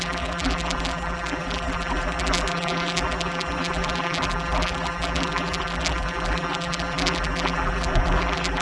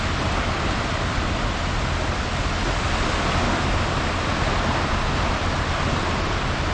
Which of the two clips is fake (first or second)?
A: first